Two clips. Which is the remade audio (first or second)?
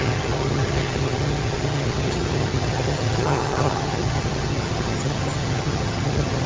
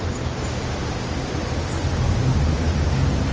first